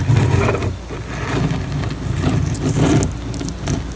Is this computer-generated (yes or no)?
no